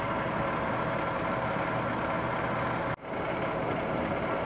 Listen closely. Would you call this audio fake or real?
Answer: real